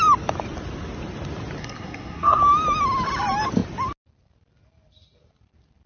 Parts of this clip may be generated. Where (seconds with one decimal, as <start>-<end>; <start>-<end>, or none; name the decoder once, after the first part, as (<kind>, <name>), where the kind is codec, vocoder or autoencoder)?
1.6-2.4 (codec, SNAC)